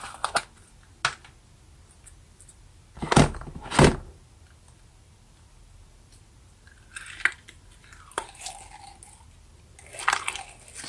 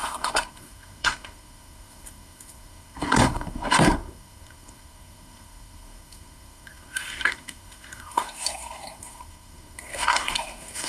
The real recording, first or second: first